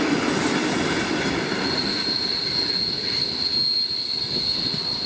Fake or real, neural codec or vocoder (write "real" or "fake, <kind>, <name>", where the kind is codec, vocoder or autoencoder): real